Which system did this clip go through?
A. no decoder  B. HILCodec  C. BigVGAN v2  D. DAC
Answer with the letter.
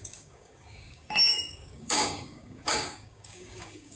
D